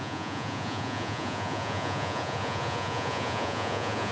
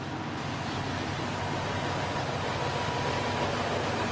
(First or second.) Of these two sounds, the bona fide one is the second